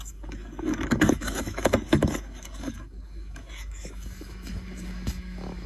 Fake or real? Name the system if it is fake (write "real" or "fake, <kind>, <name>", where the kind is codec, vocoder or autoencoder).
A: fake, codec, DAC